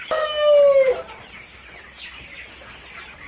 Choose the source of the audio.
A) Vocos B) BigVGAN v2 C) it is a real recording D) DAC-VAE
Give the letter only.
C